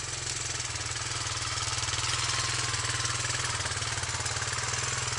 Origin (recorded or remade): recorded